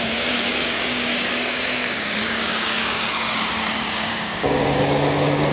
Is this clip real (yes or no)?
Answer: no